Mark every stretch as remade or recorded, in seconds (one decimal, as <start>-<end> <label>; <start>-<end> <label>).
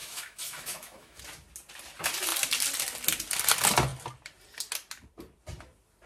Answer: 0.0-1.2 remade; 1.2-6.1 recorded